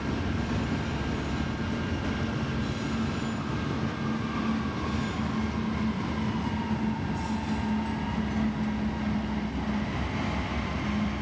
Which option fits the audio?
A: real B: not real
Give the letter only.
A